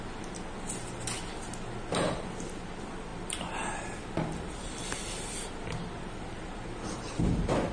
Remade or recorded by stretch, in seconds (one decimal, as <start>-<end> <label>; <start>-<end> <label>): 0.0-3.1 recorded; 3.1-7.7 remade